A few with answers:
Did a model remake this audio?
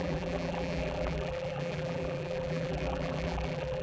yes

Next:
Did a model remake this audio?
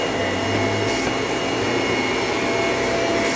no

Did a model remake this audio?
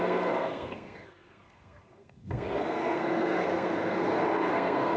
yes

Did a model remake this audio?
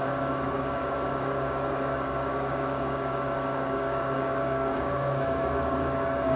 yes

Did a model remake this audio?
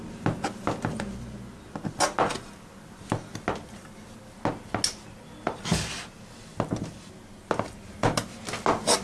no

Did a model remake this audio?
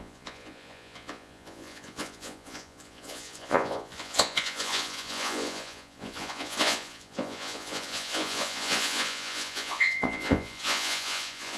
yes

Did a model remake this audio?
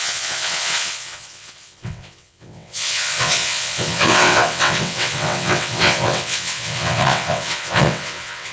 yes